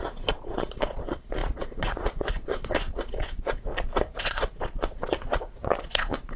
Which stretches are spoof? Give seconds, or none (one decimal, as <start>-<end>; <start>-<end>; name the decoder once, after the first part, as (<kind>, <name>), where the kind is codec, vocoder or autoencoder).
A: 0.0-3.7 (vocoder, Vocos); 4.2-6.4